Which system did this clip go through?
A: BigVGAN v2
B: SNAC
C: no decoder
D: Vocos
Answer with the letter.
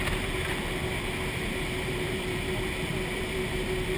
A